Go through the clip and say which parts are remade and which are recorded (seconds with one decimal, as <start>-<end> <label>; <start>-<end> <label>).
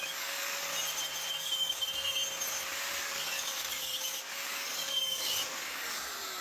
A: 0.0-0.7 remade; 0.7-1.3 recorded; 1.3-2.2 remade; 2.2-3.0 recorded; 3.0-6.4 remade